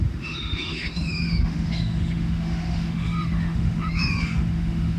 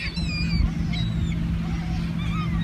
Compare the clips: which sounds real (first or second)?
second